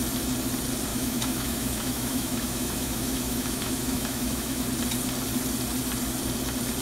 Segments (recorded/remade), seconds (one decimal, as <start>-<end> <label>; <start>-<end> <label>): 0.0-0.9 recorded; 0.9-4.6 remade; 4.6-6.8 recorded